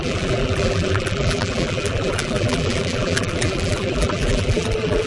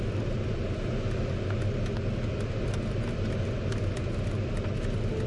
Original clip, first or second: second